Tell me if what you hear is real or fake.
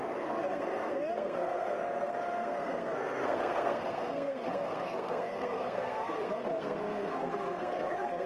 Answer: fake